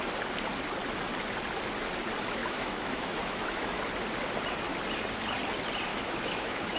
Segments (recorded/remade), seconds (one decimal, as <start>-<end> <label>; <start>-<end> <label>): 0.0-2.4 recorded; 2.4-3.8 remade; 3.8-5.9 recorded; 5.9-6.8 remade